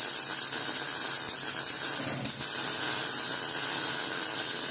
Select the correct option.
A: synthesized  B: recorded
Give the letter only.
B